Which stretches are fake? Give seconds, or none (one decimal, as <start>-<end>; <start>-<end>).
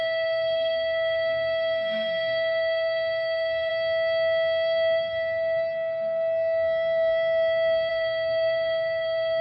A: 0.0-3.7; 7.9-9.4